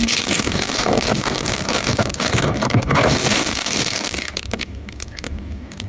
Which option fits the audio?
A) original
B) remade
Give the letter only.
B